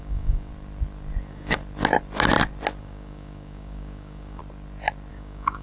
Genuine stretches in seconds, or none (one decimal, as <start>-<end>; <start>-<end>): 0.5-1.2; 1.6-2.8; 4.4-5.1